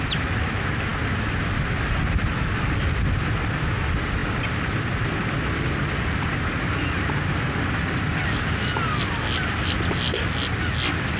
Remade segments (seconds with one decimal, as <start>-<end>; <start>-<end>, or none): none